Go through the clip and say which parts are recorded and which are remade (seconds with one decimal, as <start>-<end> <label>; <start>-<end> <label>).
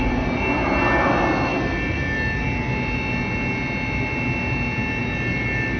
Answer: 0.0-5.8 recorded